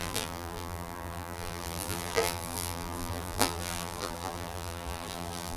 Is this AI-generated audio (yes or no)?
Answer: yes